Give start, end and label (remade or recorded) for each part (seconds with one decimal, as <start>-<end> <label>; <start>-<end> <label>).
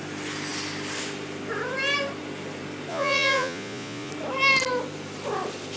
0.0-2.9 recorded; 2.9-4.1 remade; 4.1-5.8 recorded